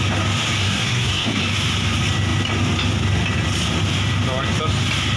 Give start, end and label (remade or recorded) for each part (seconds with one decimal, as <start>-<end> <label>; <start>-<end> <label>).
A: 0.0-0.6 recorded; 0.6-1.4 remade; 1.4-5.2 recorded